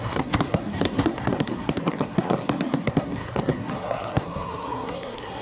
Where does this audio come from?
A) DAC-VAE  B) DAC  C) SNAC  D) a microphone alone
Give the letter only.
C